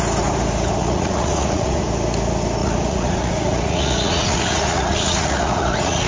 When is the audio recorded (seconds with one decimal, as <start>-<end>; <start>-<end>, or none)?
0.0-0.8; 1.8-2.6